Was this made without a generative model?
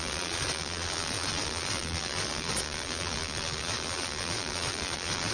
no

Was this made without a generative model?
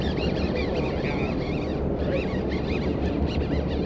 yes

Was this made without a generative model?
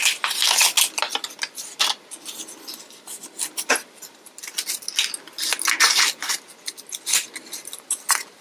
yes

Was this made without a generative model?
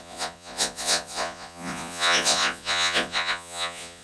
no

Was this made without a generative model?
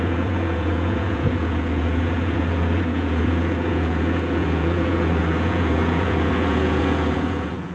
no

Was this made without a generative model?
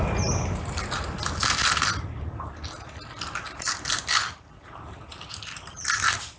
yes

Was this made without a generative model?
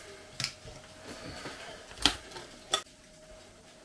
yes